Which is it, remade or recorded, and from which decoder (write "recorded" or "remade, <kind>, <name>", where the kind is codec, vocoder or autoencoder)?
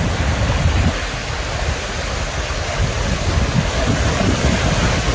recorded